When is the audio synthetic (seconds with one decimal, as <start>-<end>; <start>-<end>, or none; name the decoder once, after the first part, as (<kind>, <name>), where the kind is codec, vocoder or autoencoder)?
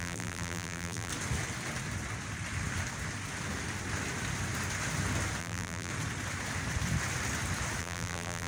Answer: 0.0-1.1 (vocoder, BigVGAN v2); 5.4-5.9; 7.8-8.5